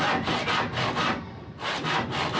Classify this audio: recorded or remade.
recorded